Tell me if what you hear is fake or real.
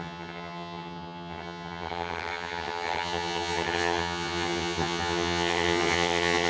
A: fake